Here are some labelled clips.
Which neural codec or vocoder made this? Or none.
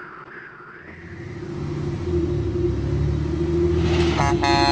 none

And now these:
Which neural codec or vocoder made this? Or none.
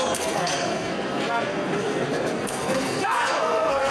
codec, SNAC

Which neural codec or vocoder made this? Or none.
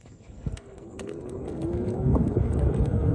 codec, SNAC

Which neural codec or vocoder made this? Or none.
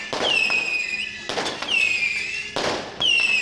none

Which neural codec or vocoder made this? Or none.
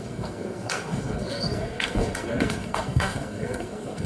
codec, SNAC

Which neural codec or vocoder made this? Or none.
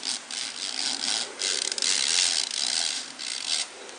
none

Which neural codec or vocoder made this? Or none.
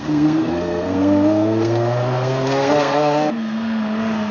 codec, SNAC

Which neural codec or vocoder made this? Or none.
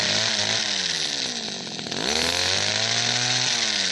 none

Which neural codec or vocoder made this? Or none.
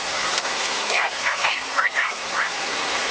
codec, SNAC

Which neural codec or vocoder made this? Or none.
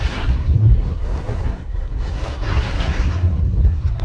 codec, SNAC